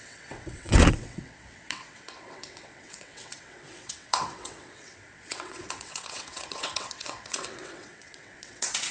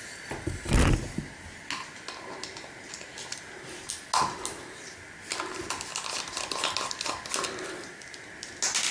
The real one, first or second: second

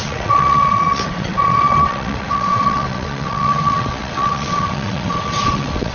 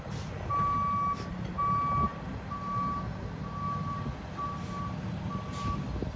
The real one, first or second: second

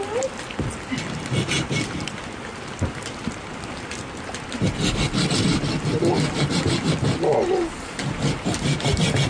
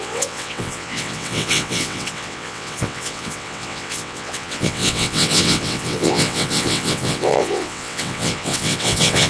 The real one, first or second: first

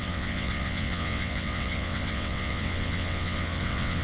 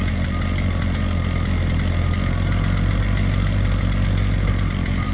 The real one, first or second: second